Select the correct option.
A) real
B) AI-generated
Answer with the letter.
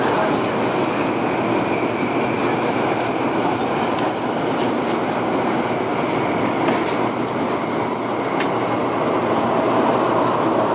A